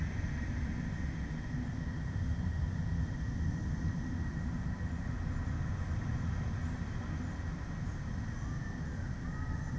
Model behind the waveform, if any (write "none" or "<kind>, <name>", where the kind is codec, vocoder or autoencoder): none